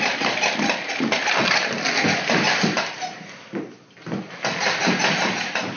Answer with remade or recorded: recorded